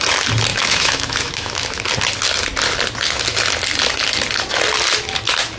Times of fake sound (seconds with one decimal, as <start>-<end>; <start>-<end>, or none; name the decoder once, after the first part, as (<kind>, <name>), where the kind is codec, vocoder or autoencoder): 0.5-1.8 (autoencoder, DAC-VAE)